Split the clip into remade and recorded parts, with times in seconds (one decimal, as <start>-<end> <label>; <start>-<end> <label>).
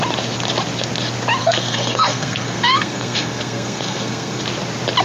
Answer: 0.0-1.4 recorded; 1.4-4.4 remade; 4.4-5.0 recorded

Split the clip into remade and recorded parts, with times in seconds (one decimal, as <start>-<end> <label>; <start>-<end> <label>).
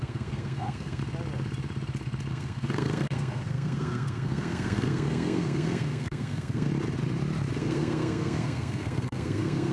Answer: 0.0-1.0 remade; 1.0-2.3 recorded; 2.3-6.7 remade; 6.7-7.6 recorded; 7.6-9.7 remade